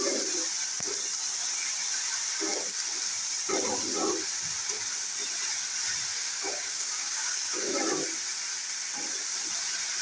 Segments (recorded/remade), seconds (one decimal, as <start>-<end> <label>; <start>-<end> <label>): 0.0-6.2 recorded; 6.2-7.7 remade; 7.7-10.0 recorded